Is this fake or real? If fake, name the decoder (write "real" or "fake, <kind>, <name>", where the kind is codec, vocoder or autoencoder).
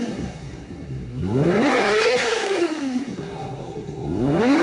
fake, codec, SNAC